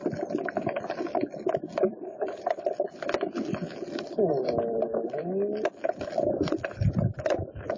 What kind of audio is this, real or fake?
fake